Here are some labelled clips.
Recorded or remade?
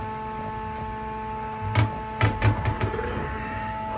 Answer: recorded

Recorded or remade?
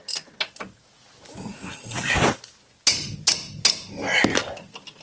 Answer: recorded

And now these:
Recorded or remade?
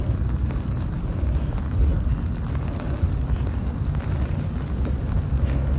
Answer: recorded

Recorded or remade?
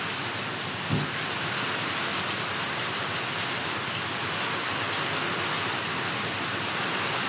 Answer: recorded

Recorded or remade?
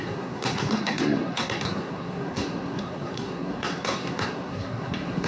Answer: remade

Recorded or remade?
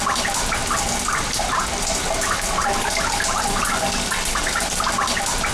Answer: recorded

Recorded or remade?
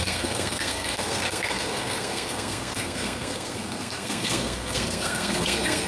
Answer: remade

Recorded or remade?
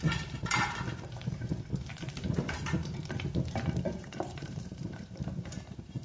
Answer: remade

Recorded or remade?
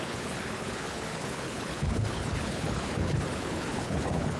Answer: remade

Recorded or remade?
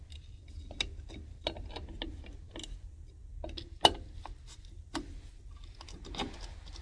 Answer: recorded